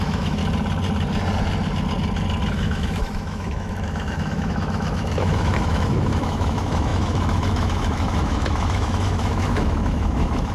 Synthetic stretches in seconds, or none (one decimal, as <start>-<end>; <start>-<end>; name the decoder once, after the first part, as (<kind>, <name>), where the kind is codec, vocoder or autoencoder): 0.0-0.4 (autoencoder, DAC-VAE); 2.5-10.5